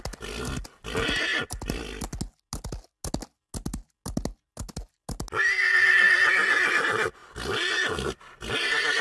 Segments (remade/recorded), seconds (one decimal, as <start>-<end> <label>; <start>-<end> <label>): 0.0-9.0 recorded